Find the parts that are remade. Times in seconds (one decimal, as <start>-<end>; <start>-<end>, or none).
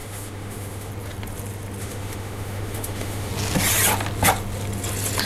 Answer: 0.0-0.9; 1.8-3.3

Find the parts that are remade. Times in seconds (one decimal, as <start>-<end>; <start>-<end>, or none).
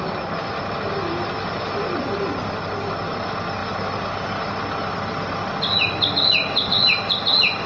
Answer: none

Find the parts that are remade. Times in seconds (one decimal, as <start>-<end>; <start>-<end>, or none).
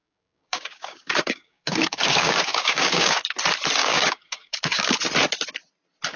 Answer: 0.0-3.2; 3.8-5.0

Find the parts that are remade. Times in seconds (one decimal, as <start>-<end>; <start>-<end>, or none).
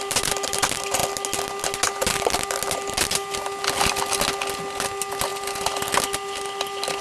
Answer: none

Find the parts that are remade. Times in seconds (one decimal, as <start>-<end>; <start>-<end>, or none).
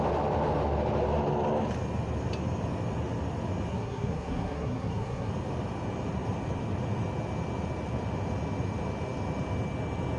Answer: 3.7-5.3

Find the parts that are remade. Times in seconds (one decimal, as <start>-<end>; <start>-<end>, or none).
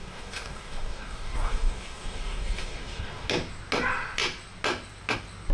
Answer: 0.0-3.3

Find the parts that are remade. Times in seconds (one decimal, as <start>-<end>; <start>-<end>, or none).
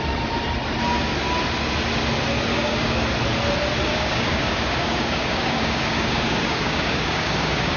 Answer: 2.5-3.0; 3.9-7.8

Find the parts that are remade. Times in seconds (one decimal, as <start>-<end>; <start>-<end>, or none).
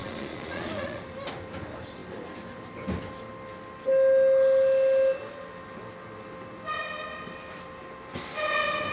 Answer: 0.0-1.0